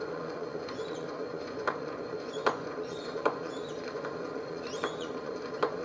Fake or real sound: fake